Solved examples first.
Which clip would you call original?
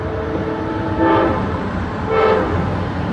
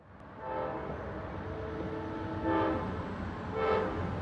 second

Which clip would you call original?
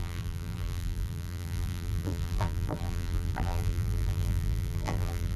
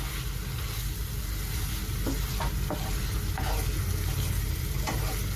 second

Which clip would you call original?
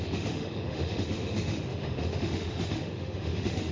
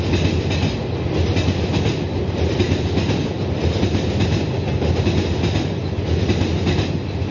second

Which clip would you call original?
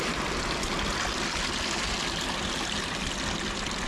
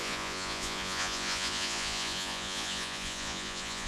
first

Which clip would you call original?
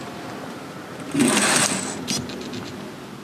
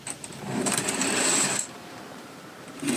first